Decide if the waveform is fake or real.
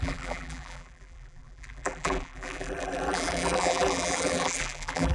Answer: fake